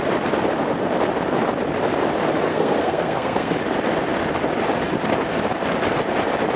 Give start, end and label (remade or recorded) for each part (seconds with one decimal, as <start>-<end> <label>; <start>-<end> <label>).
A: 0.0-2.5 recorded; 2.5-3.5 remade; 3.5-6.6 recorded